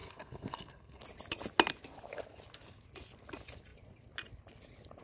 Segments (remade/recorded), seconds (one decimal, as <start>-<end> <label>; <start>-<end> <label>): 0.0-1.0 remade; 1.0-5.0 recorded